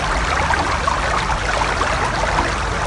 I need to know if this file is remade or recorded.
recorded